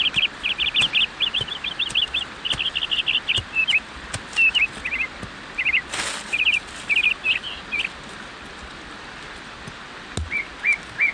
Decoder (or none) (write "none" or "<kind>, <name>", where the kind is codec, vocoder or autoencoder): none